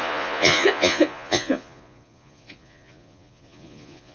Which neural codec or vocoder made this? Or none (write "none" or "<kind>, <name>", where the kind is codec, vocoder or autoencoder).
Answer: vocoder, Vocos